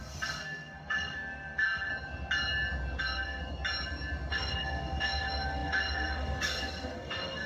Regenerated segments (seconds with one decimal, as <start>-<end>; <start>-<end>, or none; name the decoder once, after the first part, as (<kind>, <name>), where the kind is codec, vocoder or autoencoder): 0.0-1.9 (codec, SNAC); 3.0-3.4; 4.3-7.5